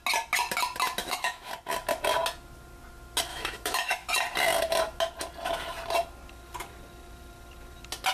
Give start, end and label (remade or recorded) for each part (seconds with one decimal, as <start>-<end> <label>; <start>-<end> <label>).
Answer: 0.0-1.0 recorded; 1.0-1.5 remade; 1.5-3.3 recorded; 3.3-4.1 remade; 4.1-8.1 recorded